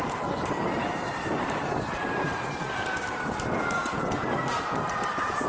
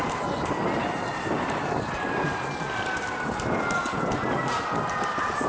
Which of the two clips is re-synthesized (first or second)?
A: first